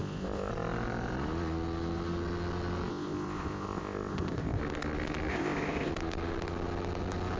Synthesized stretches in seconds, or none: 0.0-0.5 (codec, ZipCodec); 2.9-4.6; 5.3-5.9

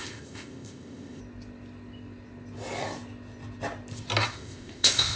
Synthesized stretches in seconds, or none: 0.0-1.2 (codec, ZipCodec); 4.3-5.2

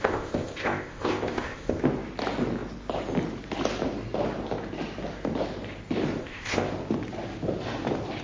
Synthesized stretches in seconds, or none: 0.0-1.8 (codec, ZipCodec); 6.2-6.7

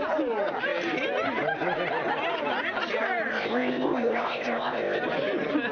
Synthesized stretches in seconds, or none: 3.3-5.0 (codec, ZipCodec)

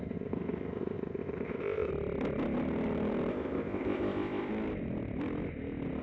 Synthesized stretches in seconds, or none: 0.0-1.9 (codec, ZipCodec); 3.3-4.5

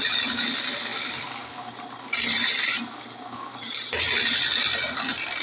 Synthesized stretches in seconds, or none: none

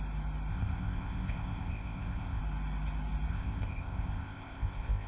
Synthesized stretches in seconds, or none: 0.5-2.4 (codec, ZipCodec); 3.3-5.1